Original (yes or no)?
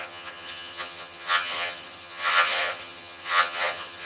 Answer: no